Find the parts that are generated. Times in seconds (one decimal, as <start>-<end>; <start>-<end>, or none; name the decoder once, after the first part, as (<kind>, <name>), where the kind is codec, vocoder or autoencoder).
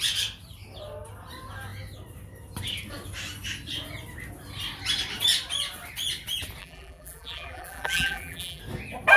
6.6-8.6 (vocoder, BigVGAN v2)